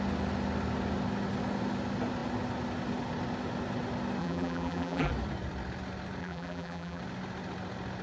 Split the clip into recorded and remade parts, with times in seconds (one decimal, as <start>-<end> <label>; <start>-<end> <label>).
0.0-4.2 recorded; 4.2-5.1 remade; 5.1-6.2 recorded; 6.2-7.0 remade; 7.0-8.0 recorded